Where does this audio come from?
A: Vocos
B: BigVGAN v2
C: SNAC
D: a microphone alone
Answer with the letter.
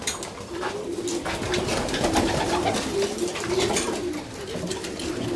D